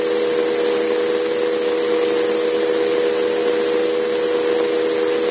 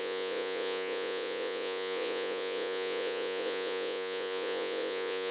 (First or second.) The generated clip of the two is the second